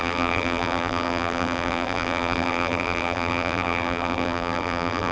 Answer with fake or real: fake